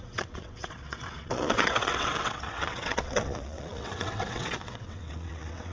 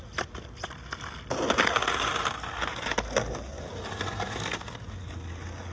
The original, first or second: second